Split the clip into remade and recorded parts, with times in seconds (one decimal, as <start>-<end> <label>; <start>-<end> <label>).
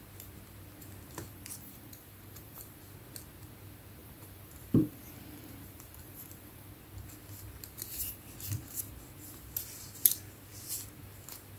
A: 0.0-1.3 recorded; 1.3-2.8 remade; 2.8-4.0 recorded; 4.0-6.7 remade; 6.7-11.6 recorded